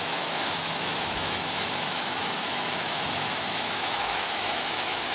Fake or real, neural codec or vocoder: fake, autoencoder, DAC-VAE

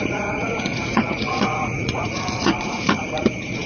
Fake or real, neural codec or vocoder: fake, vocoder, Vocos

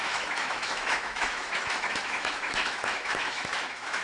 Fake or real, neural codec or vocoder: fake, autoencoder, DAC-VAE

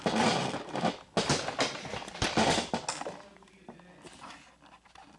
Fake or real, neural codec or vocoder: real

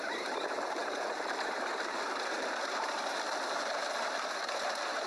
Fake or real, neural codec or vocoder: fake, vocoder, BigVGAN v2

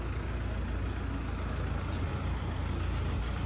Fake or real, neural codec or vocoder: real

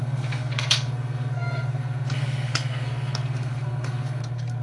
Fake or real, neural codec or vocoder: fake, codec, SNAC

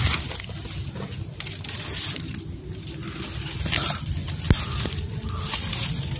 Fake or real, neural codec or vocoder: real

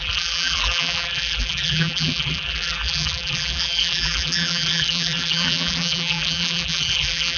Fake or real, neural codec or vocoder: fake, vocoder, BigVGAN v2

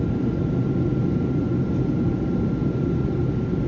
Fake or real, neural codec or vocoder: real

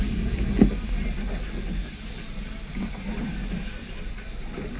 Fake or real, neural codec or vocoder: real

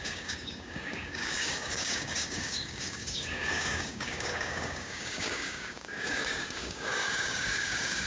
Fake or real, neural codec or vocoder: fake, codec, DAC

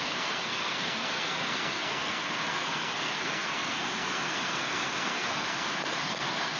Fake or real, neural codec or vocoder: fake, codec, SNAC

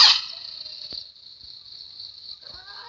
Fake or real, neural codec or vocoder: real